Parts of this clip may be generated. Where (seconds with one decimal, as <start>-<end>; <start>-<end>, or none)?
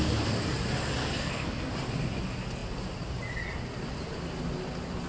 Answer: 1.0-1.7